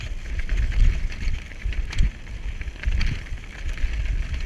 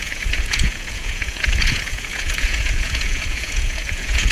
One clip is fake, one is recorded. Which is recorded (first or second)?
first